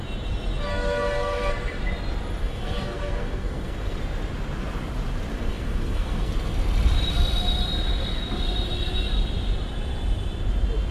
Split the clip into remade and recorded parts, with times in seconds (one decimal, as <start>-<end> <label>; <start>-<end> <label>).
0.0-0.7 recorded; 0.7-1.8 remade; 1.8-2.4 recorded; 2.4-4.0 remade; 4.0-5.3 recorded; 5.3-6.3 remade; 6.3-10.9 recorded